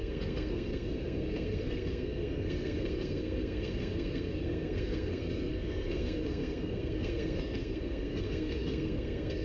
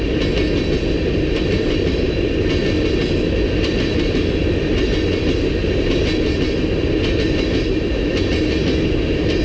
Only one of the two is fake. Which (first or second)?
first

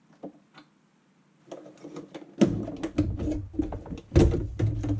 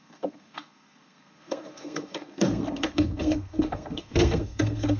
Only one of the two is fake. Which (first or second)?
second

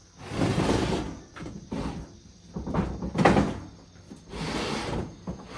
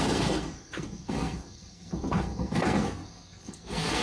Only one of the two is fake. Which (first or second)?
second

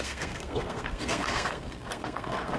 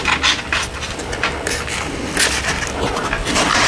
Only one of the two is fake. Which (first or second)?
first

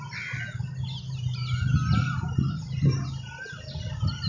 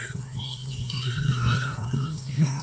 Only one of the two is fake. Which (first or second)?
second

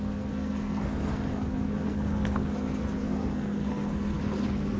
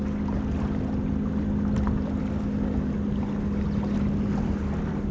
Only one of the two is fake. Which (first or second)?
first